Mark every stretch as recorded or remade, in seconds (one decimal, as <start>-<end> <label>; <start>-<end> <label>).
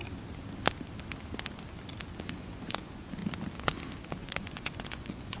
0.0-2.2 recorded; 2.2-3.2 remade; 3.2-4.2 recorded; 4.2-5.4 remade